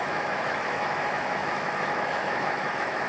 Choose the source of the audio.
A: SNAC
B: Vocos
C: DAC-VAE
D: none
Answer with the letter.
C